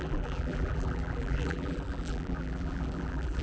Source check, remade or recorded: remade